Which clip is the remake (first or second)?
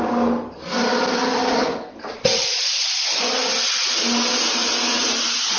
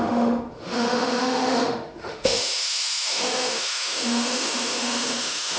second